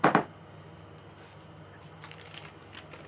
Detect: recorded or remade recorded